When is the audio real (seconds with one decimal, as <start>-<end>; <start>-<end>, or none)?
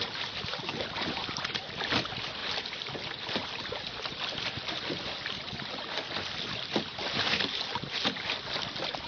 0.0-9.1